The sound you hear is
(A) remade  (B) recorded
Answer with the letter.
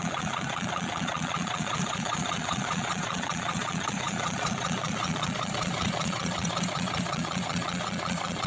A